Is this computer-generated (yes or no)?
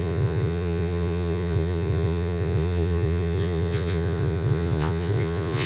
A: yes